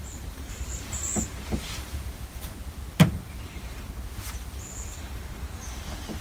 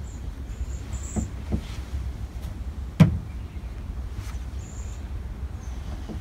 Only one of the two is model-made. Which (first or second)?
first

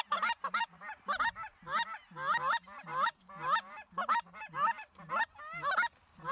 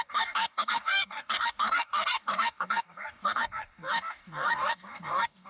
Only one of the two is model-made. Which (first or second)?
second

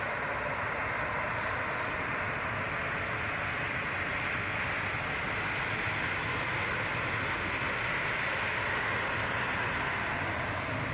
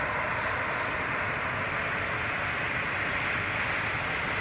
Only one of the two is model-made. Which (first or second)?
second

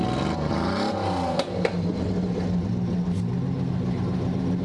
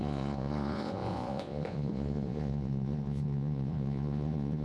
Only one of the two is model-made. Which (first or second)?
second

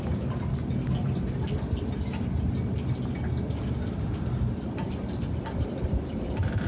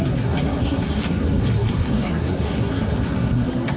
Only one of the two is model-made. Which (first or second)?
second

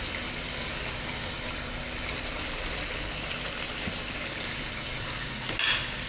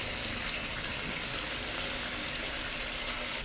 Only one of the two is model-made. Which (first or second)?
second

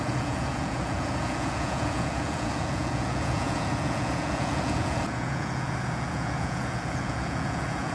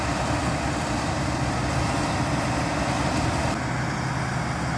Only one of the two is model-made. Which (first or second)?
first